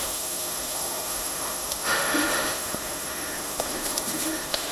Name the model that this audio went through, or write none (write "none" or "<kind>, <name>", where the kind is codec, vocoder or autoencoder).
autoencoder, DAC-VAE